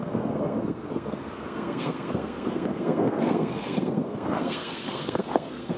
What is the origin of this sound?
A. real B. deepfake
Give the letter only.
B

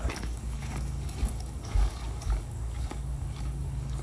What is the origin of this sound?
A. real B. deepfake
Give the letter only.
B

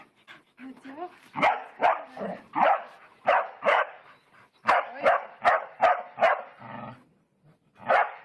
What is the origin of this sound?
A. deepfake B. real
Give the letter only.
B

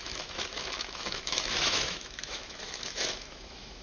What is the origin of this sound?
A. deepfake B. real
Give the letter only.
A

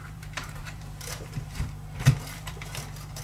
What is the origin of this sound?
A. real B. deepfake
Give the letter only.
B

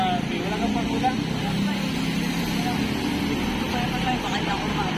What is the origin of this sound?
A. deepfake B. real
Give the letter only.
B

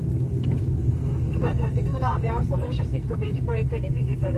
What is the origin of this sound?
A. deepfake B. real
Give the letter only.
A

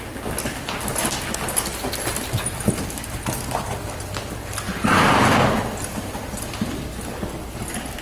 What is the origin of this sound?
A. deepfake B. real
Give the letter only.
B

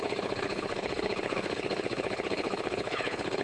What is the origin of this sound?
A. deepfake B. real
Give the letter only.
A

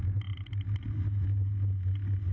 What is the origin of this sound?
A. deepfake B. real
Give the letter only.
B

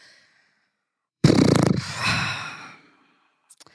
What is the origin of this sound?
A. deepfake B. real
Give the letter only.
A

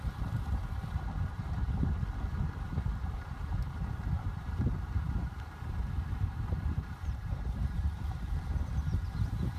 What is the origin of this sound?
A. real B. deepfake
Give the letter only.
B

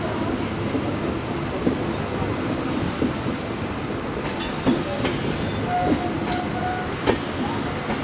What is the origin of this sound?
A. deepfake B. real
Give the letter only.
B